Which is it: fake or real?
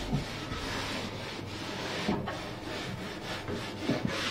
real